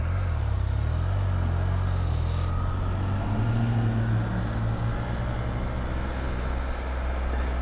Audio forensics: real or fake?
real